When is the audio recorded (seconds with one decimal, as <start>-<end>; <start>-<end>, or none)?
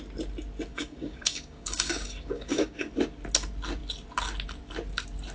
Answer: 0.0-0.7; 2.9-5.3